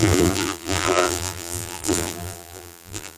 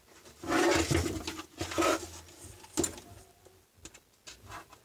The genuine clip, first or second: second